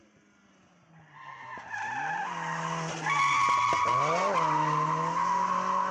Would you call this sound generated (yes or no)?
no